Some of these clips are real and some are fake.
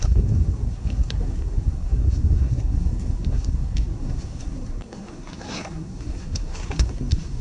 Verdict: fake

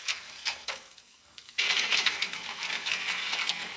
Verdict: fake